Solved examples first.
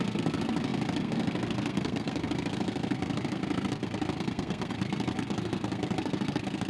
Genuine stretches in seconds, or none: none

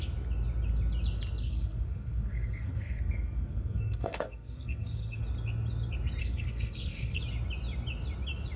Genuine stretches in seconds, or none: 0.0-1.4; 5.2-6.2; 7.2-8.6

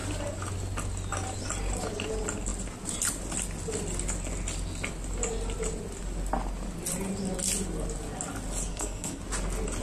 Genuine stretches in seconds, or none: 0.0-8.7; 9.2-9.8

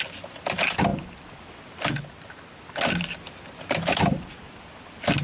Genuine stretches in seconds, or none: 0.0-5.2

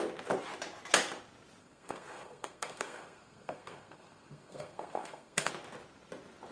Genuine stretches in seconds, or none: 0.0-1.6; 5.5-6.5